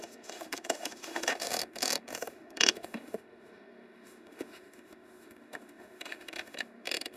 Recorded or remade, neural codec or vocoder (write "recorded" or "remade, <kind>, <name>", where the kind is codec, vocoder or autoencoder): remade, autoencoder, DAC-VAE